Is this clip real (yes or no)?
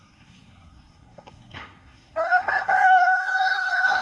no